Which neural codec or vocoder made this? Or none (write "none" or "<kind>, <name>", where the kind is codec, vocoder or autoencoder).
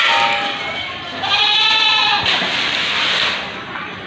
none